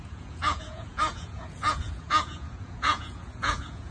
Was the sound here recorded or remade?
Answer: remade